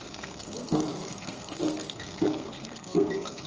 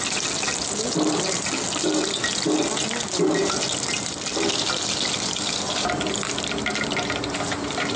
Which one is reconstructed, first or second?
first